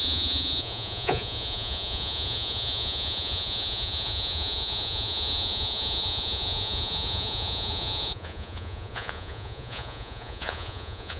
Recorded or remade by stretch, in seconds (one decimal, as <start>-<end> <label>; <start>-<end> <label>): 0.0-11.2 remade